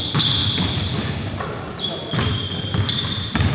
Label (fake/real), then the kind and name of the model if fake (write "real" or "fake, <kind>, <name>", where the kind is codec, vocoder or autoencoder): real